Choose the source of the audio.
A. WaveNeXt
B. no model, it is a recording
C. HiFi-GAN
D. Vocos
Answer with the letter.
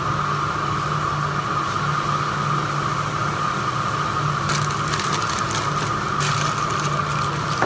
B